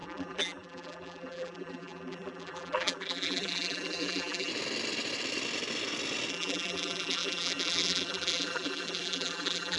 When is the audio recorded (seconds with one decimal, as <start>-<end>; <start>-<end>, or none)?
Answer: 4.5-6.3